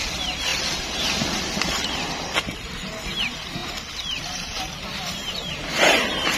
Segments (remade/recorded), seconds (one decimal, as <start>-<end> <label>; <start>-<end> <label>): 0.0-3.6 remade; 3.6-4.2 recorded; 4.2-6.4 remade